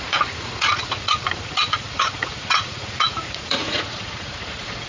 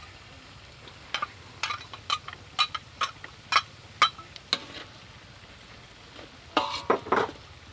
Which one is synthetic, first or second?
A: first